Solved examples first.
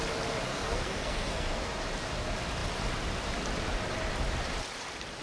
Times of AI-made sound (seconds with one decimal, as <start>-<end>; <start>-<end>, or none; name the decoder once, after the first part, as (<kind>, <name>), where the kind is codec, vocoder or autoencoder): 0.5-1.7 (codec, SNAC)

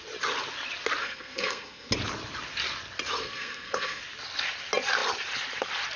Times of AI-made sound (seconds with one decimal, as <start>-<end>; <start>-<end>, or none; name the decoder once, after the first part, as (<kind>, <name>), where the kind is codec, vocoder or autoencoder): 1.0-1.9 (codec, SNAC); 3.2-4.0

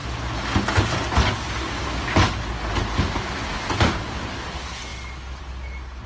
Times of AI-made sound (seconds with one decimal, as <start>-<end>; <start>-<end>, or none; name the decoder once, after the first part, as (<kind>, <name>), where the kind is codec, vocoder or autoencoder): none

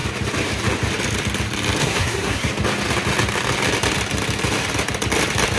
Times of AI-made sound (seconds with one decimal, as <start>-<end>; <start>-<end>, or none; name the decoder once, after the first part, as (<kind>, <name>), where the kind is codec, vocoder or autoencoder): 1.8-2.5 (codec, SNAC)

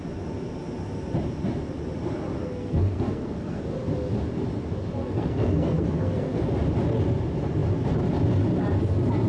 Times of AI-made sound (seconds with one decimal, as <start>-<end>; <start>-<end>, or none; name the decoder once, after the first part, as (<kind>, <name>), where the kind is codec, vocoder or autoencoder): 2.4-3.6 (codec, SNAC); 5.0-6.5

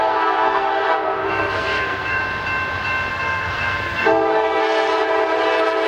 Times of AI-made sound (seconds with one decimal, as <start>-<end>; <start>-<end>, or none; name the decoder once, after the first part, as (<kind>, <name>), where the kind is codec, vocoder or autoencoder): 0.0-2.2 (codec, SNAC); 3.1-4.9

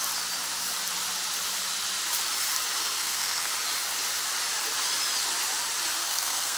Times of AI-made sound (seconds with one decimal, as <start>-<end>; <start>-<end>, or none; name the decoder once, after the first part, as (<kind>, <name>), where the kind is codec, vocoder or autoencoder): 2.8-3.5 (codec, SNAC); 6.0-6.6